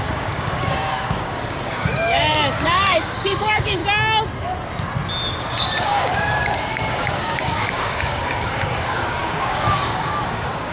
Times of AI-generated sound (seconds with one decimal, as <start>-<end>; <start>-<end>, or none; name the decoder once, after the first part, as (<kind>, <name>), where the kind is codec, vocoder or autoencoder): 0.0-3.8 (codec, DAC); 5.4-10.7